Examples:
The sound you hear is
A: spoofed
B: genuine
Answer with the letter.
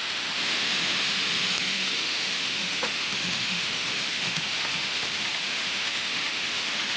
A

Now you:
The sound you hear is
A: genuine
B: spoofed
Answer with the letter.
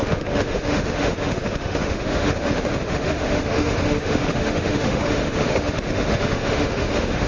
B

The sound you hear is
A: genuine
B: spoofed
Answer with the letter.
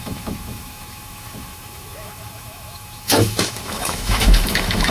B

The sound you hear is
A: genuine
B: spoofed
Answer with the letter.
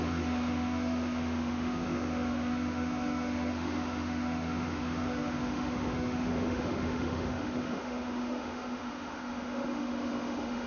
B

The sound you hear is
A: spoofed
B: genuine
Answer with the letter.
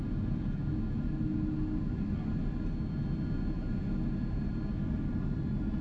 B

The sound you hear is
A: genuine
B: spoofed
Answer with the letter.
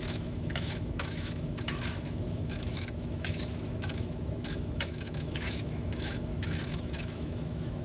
B